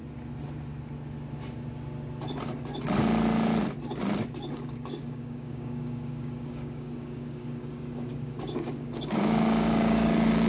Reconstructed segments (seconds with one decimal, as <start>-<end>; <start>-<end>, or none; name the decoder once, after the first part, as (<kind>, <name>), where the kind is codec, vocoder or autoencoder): 4.5-10.5 (codec, DAC)